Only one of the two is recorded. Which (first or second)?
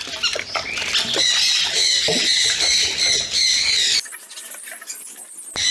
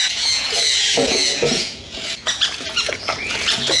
first